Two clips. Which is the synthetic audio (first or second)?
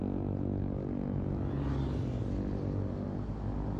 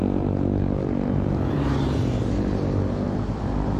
second